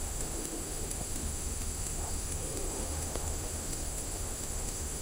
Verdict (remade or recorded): remade